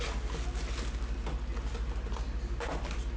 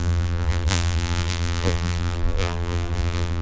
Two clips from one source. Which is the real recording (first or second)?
first